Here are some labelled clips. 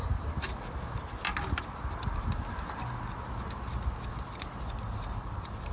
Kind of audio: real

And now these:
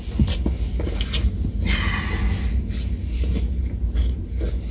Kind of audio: real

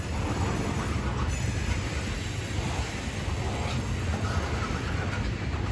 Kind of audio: real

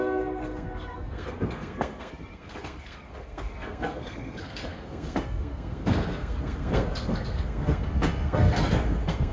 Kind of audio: fake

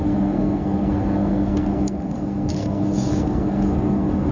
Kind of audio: fake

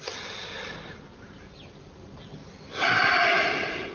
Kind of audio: real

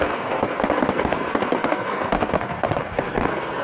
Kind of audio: fake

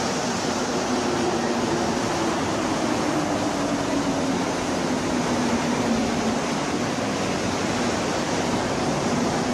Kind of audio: real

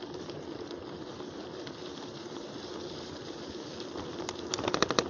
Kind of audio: real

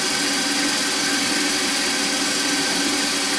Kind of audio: real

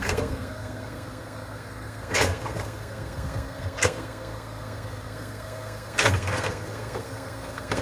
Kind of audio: fake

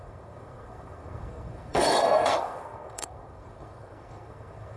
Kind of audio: fake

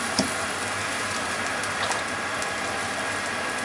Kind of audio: real